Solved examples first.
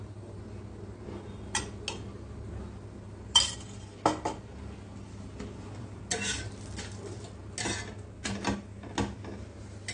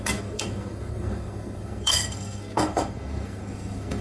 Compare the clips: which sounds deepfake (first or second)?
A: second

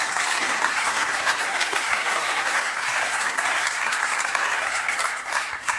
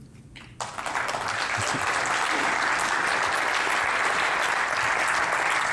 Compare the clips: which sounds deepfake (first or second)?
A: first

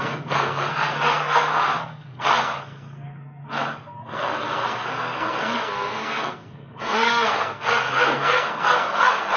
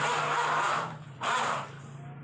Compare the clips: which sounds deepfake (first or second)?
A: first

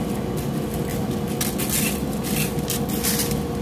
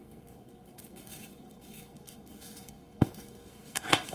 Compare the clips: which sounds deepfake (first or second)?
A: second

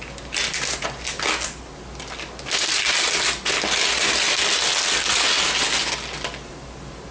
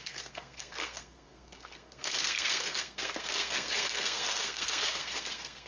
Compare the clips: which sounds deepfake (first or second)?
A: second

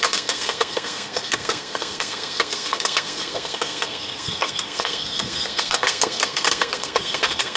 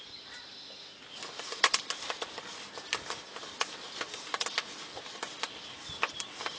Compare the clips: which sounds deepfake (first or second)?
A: first